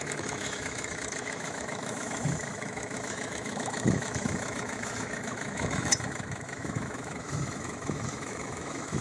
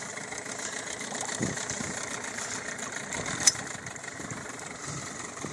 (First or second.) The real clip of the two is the second